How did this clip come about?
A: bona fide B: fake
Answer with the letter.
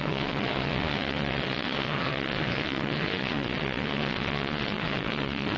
B